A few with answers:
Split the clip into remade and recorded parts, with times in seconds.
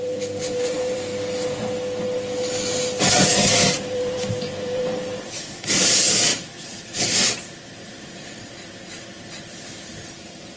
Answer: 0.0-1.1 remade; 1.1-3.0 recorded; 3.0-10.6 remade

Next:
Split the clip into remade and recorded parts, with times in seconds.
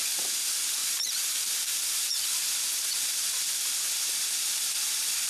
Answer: 0.0-0.8 recorded; 0.8-2.3 remade; 2.3-5.3 recorded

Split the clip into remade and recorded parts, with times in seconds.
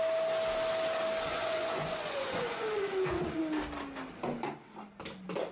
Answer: 0.0-1.3 recorded; 1.3-3.4 remade; 3.4-5.5 recorded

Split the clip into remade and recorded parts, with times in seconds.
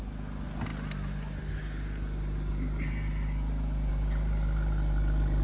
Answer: 0.0-5.4 recorded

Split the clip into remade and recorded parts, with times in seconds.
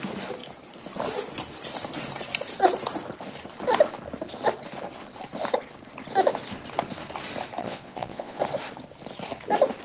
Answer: 0.0-7.6 recorded; 7.6-8.4 remade; 8.4-9.8 recorded